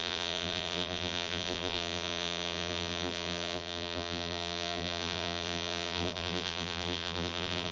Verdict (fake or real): fake